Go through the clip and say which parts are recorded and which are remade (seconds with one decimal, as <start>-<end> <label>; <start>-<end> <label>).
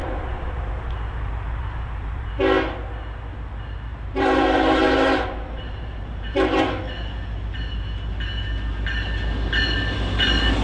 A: 0.0-2.3 remade; 2.3-3.9 recorded; 3.9-6.6 remade; 6.6-10.6 recorded